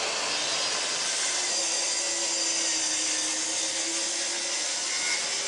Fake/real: real